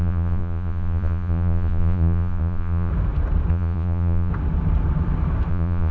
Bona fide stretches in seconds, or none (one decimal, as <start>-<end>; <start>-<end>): 2.9-3.5; 4.3-5.5

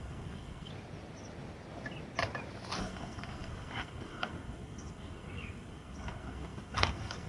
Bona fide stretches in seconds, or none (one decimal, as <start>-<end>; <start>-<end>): 0.7-2.8

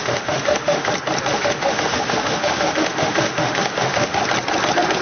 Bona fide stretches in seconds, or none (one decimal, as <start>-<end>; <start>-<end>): 0.9-1.3; 4.2-5.0

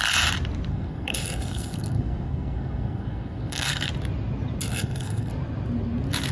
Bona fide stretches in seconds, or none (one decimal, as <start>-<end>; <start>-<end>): 0.0-0.7; 3.9-4.7; 5.3-6.3

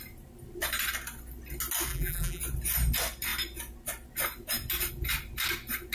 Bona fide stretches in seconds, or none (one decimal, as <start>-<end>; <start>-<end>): 0.0-1.9; 2.4-5.9

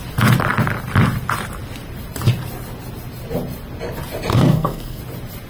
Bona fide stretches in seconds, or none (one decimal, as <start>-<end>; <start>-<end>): 0.0-4.3; 5.0-5.5

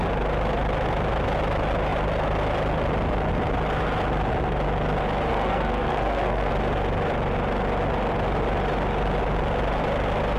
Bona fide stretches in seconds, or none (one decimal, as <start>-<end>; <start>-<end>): 0.0-5.3; 6.5-10.4